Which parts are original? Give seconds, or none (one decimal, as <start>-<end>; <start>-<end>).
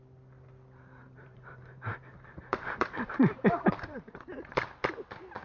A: 0.0-1.0; 4.2-5.4